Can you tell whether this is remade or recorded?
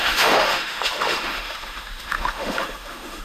remade